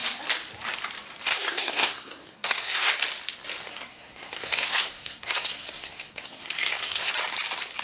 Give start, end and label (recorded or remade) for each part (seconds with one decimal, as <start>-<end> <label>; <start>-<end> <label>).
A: 0.0-1.3 recorded; 1.3-2.9 remade; 2.9-3.7 recorded; 3.7-7.1 remade; 7.1-7.8 recorded